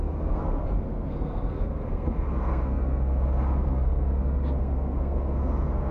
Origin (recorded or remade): remade